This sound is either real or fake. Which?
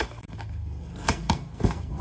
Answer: fake